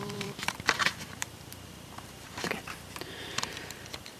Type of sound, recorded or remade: remade